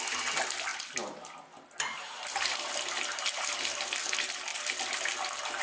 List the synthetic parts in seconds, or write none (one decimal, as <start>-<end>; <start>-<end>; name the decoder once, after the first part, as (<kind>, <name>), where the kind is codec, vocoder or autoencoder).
none